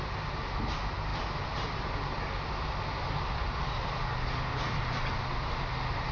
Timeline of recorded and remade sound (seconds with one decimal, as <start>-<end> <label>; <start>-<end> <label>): 0.0-6.1 recorded